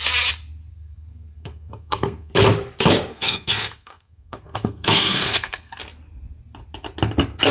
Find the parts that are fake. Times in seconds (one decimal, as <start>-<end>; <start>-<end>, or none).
0.7-2.3; 3.1-5.8

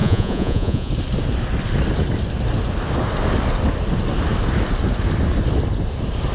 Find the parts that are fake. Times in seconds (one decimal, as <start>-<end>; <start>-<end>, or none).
0.0-0.9

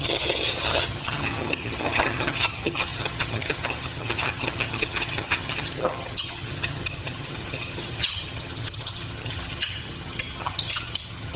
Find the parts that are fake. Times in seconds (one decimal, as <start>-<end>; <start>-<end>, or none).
0.0-11.4

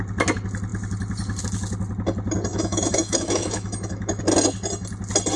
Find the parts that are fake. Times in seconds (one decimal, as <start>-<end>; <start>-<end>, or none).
2.5-4.2

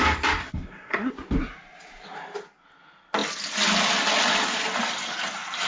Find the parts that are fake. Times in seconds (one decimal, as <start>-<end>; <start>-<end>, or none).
0.4-1.1

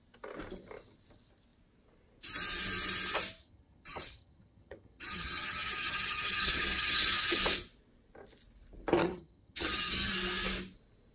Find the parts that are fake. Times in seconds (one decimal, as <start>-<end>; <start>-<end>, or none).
3.4-7.4; 9.0-10.1

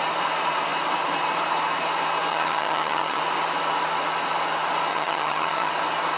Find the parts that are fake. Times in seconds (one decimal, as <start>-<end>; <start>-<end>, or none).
2.3-3.2; 4.9-5.7